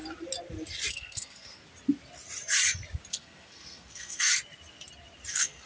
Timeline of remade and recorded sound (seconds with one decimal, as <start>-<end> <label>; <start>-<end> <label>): 0.0-0.9 recorded; 0.9-1.6 remade; 1.6-3.1 recorded; 3.1-4.3 remade; 4.3-5.3 recorded; 5.3-5.7 remade